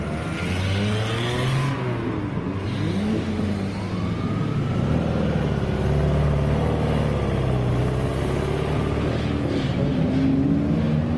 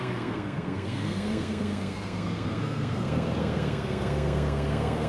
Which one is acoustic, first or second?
first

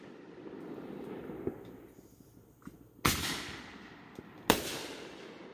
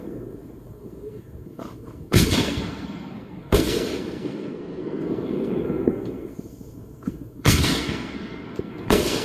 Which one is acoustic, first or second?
first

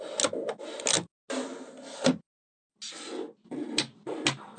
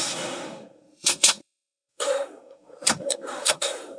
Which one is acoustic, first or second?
first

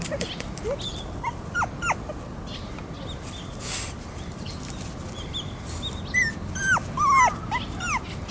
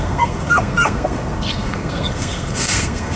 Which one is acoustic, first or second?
first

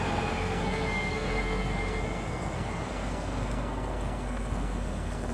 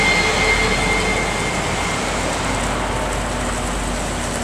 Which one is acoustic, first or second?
second